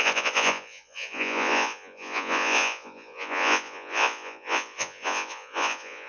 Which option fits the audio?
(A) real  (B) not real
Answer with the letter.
B